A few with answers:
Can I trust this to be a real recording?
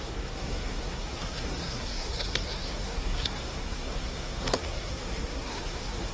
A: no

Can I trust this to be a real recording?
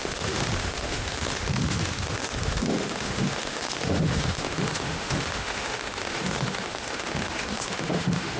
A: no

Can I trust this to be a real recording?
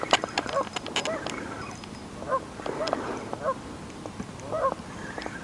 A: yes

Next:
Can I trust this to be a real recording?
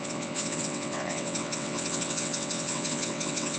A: no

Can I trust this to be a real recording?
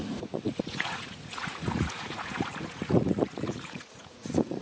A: no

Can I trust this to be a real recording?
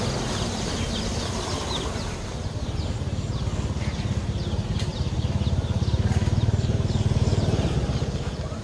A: yes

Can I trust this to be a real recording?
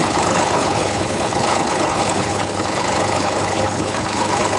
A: no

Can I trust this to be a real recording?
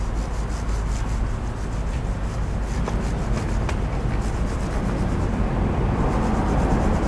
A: yes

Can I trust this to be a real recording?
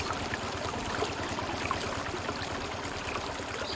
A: yes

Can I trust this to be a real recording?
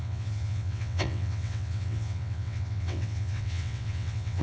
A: no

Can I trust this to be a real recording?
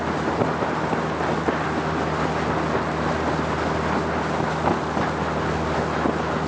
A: yes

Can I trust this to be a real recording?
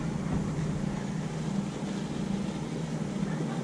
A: yes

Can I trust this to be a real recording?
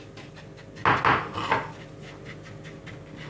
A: yes